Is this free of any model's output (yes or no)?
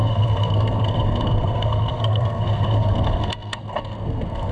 no